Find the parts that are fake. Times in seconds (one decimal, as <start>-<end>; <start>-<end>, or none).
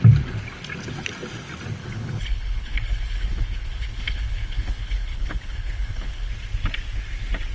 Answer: 1.8-6.3